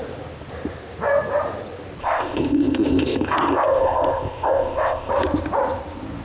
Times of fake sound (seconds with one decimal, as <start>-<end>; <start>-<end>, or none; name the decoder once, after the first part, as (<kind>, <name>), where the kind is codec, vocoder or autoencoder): 2.0-5.1 (codec, ZipCodec)